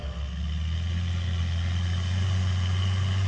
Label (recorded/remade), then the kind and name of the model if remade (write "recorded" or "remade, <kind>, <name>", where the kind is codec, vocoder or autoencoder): recorded